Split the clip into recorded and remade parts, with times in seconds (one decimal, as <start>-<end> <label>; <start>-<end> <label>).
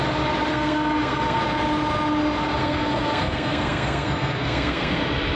0.0-0.5 recorded; 0.5-1.4 remade; 1.4-2.6 recorded; 2.6-5.0 remade; 5.0-5.4 recorded